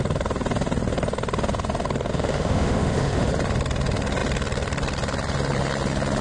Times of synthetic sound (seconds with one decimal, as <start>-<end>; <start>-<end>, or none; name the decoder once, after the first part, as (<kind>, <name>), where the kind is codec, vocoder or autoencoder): 2.1-3.3 (autoencoder, DAC-VAE)

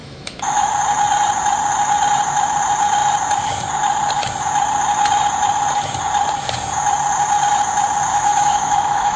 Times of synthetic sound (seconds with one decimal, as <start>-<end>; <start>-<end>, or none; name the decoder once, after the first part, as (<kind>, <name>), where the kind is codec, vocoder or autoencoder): 0.0-0.7 (autoencoder, DAC-VAE); 8.1-9.2

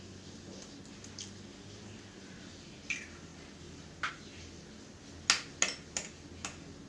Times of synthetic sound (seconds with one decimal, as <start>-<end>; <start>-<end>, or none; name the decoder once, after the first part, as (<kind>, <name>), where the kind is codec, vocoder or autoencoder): none

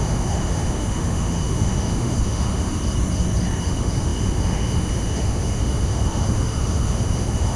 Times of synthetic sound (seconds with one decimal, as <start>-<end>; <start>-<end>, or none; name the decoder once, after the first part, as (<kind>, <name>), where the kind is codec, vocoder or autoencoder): 0.0-2.8 (autoencoder, DAC-VAE); 3.6-7.6

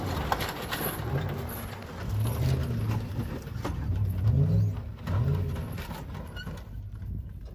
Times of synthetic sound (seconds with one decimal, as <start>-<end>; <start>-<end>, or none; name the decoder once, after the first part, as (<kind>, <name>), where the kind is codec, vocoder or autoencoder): none

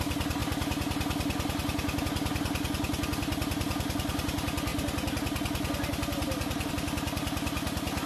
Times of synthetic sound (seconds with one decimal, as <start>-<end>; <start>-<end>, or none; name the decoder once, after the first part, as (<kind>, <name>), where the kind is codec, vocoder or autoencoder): none

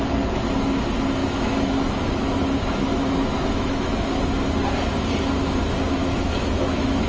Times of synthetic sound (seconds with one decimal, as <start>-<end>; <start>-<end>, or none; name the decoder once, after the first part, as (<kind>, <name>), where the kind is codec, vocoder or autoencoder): 1.2-4.2 (autoencoder, DAC-VAE); 6.0-7.1